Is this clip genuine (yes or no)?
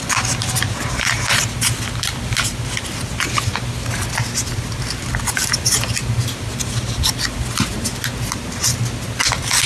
yes